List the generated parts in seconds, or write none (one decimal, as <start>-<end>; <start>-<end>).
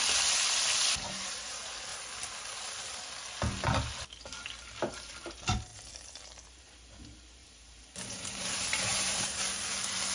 5.7-6.6; 7.4-9.5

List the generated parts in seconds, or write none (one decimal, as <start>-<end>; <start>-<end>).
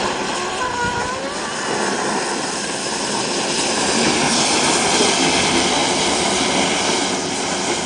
5.8-7.9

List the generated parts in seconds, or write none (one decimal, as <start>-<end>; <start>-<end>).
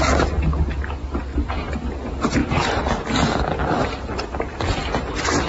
none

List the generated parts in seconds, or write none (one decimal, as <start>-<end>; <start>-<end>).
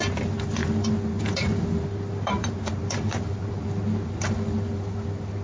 0.0-5.4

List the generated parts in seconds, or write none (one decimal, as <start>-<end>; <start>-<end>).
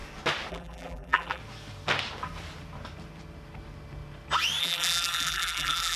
0.5-1.4; 4.6-6.0